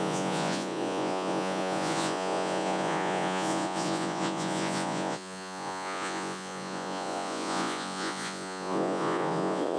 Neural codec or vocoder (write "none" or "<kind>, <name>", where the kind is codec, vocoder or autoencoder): vocoder, Vocos